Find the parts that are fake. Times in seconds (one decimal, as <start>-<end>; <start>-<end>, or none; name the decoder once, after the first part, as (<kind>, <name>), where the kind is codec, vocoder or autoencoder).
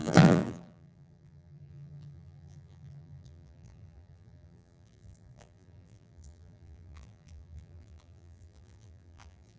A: 0.0-9.6 (vocoder, BigVGAN v2)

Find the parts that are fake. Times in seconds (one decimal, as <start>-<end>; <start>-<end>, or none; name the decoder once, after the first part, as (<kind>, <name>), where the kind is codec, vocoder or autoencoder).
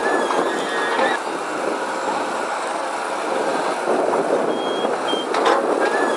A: 2.7-3.5 (vocoder, BigVGAN v2); 5.6-6.2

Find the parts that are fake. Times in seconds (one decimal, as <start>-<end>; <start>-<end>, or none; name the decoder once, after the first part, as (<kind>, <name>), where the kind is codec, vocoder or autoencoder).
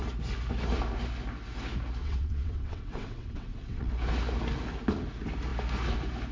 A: 2.0-3.9 (vocoder, WaveNeXt)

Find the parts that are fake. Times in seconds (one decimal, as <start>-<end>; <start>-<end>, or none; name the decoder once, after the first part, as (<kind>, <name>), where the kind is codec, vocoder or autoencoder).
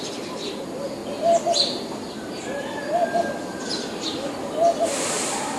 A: none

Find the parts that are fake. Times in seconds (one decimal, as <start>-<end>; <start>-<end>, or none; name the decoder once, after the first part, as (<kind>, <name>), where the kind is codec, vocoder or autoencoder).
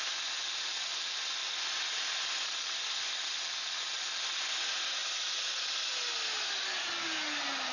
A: none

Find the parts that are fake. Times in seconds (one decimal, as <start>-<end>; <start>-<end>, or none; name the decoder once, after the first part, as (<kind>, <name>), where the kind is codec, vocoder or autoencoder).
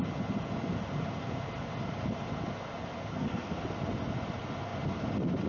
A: 3.1-3.6 (codec, SNAC)